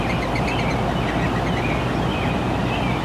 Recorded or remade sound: recorded